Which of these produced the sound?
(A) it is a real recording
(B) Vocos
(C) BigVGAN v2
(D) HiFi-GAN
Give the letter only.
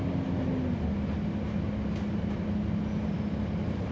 A